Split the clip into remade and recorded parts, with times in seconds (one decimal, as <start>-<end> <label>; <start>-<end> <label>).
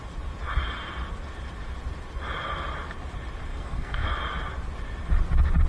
0.0-3.5 recorded; 3.5-4.1 remade; 4.1-5.7 recorded